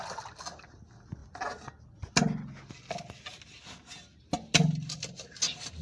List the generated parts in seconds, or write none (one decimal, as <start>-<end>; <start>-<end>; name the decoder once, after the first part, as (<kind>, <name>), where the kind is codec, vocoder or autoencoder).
1.2-1.8 (vocoder, BigVGAN v2)